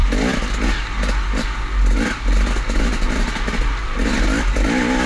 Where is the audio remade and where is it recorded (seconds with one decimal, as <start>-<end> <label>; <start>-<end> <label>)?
0.0-5.1 recorded